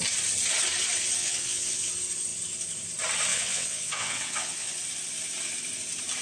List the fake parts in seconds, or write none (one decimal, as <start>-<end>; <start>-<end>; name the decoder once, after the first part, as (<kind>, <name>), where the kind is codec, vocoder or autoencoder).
1.2-1.9 (vocoder, WaveNeXt); 3.3-4.7